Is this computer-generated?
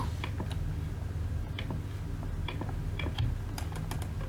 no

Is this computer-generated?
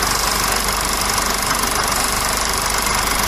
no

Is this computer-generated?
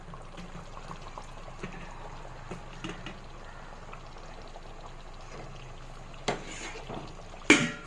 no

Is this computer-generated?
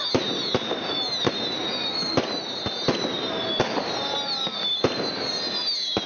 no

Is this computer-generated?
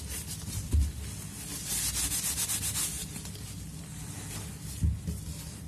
no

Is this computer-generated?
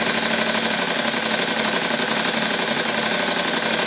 no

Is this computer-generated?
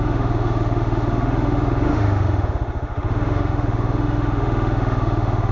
yes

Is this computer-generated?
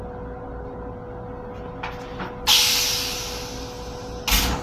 no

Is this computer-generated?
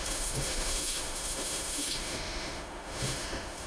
yes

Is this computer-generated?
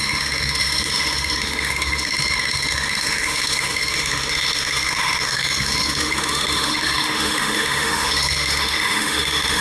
yes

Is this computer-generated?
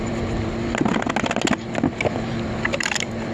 no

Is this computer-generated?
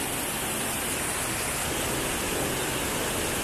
no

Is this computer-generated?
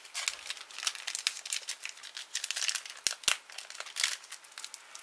no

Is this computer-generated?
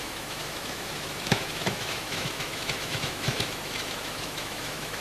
yes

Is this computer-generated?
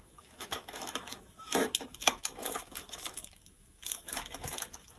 yes